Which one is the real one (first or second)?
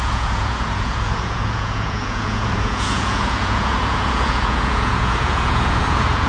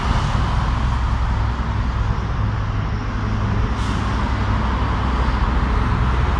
second